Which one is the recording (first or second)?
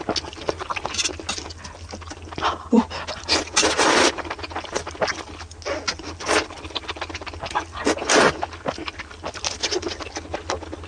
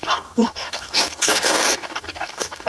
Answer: first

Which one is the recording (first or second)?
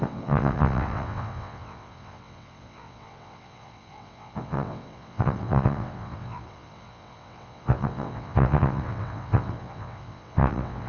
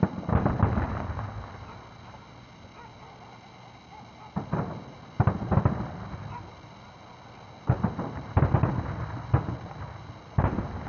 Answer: second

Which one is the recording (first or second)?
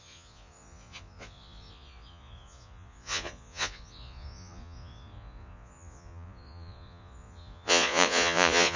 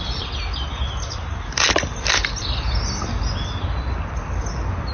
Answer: second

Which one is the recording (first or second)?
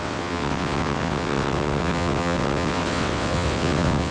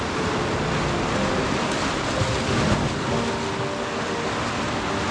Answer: second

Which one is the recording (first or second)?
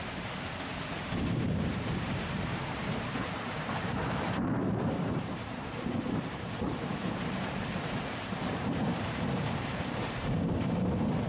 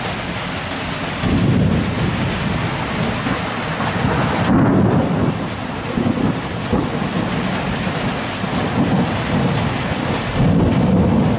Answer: second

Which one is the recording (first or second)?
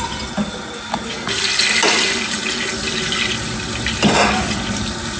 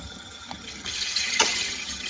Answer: first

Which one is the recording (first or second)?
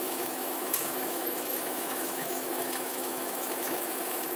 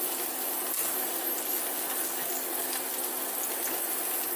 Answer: second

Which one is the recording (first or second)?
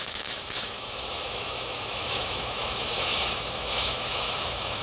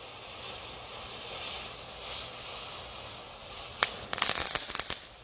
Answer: second